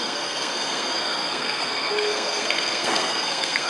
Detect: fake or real fake